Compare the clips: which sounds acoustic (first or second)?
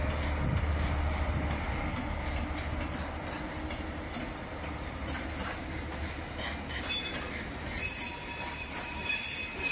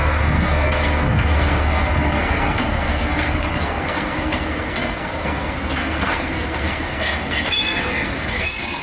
first